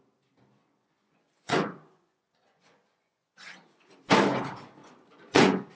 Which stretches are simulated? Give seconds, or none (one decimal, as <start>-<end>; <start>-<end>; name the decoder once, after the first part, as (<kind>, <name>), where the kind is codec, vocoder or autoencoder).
0.6-4.0 (vocoder, Vocos); 4.8-5.7